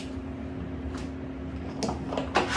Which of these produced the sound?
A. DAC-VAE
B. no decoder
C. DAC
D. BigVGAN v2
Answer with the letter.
B